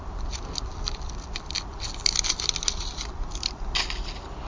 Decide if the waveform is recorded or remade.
remade